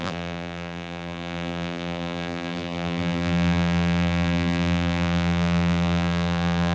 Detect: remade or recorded remade